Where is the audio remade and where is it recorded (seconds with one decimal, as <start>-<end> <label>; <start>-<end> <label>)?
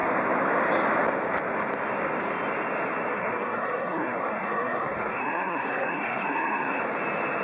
0.0-3.1 recorded; 3.1-6.8 remade; 6.8-7.4 recorded